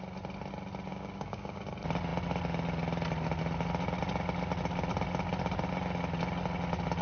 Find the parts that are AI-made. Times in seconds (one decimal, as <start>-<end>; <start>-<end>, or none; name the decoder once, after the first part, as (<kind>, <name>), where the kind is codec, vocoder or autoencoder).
0.9-1.6 (codec, DAC)